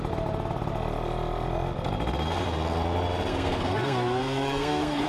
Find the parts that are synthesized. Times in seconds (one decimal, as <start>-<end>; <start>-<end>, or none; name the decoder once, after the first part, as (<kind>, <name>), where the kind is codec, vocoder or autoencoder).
3.3-5.1 (codec, SNAC)